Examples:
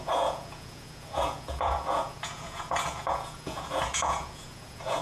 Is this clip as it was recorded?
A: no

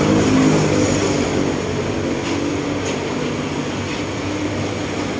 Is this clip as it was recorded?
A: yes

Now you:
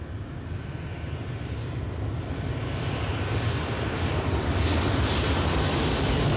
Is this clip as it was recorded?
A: yes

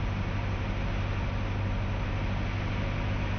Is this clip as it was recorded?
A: yes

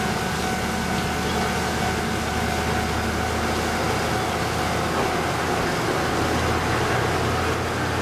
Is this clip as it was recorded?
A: yes